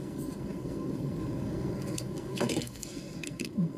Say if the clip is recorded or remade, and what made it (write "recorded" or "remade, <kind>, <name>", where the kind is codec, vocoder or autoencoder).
remade, codec, SNAC